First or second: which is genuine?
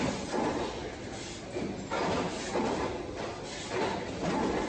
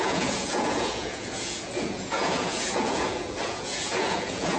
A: first